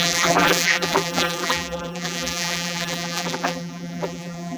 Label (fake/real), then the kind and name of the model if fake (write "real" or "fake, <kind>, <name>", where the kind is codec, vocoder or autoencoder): fake, vocoder, BigVGAN v2